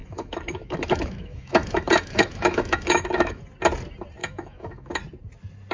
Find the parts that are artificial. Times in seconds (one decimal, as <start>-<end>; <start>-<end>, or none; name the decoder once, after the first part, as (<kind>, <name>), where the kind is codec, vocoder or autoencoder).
0.0-3.4 (autoencoder, DAC-VAE); 4.2-4.9